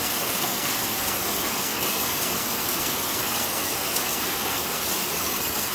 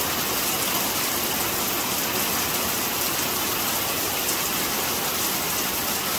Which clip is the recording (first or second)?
second